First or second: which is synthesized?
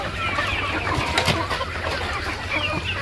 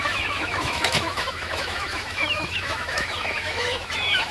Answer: second